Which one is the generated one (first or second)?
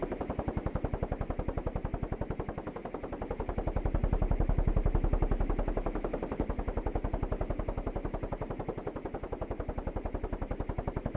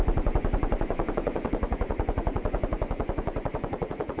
second